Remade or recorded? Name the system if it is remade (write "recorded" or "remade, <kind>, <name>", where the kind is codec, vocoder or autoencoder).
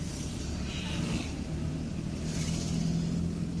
recorded